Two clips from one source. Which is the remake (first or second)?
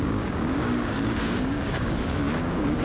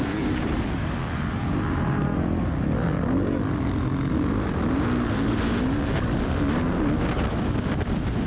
first